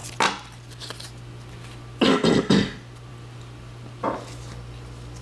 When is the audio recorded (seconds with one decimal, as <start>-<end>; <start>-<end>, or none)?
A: 0.0-5.2